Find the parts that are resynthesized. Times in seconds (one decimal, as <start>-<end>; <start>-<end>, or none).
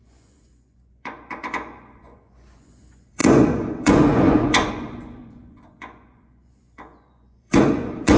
0.0-8.2